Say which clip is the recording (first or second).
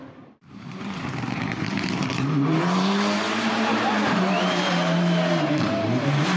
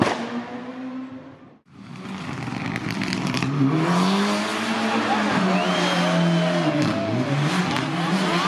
second